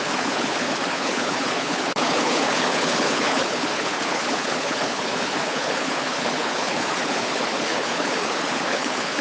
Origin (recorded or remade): remade